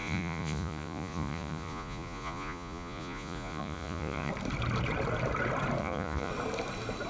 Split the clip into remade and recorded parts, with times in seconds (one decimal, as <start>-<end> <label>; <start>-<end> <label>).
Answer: 0.0-4.3 remade; 4.3-5.8 recorded; 5.8-6.3 remade; 6.3-7.1 recorded